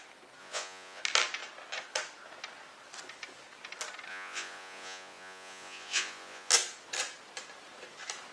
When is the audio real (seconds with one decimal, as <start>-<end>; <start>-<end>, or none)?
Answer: 0.0-0.4; 1.0-4.1; 6.5-8.3